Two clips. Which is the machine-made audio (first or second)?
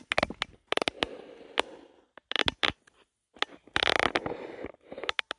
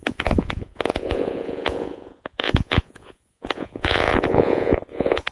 second